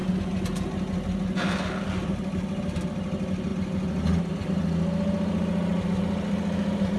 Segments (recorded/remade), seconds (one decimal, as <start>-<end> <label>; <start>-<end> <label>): 0.0-7.0 recorded